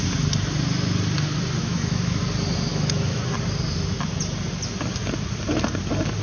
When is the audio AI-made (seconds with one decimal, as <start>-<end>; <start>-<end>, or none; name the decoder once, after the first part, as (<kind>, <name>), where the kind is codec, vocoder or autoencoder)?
1.6-2.2 (autoencoder, DAC-VAE); 2.7-3.2